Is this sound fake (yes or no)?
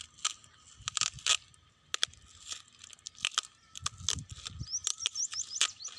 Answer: no